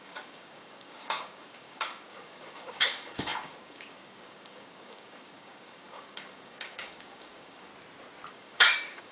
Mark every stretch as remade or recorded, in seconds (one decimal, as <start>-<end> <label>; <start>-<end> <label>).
0.0-7.7 remade; 7.7-8.3 recorded; 8.3-9.1 remade